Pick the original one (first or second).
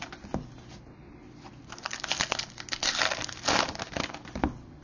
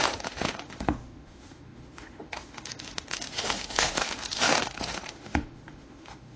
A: first